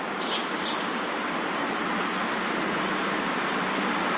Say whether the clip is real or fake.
real